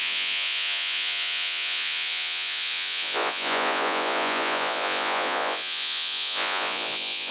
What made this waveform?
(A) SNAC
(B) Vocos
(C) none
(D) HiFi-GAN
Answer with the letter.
B